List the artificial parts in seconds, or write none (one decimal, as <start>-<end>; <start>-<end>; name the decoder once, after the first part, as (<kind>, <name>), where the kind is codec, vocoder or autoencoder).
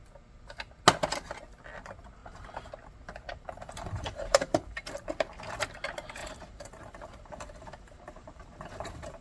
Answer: 2.2-2.7 (vocoder, BigVGAN v2); 3.3-4.9; 6.2-9.2